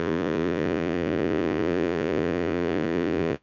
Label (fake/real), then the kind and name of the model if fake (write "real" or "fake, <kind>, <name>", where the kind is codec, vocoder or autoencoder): fake, vocoder, Vocos